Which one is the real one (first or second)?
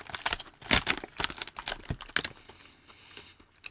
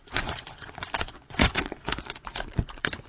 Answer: first